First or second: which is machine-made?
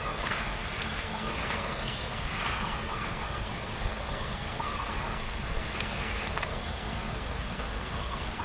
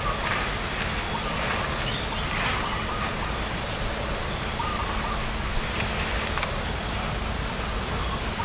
first